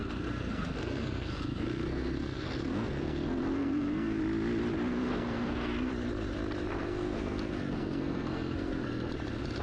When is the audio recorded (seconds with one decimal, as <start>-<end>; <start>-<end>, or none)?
4.2-4.9; 5.9-6.8; 9.1-9.6